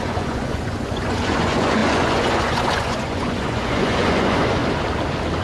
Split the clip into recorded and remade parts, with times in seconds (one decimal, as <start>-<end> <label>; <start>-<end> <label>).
0.0-4.6 remade; 4.6-5.4 recorded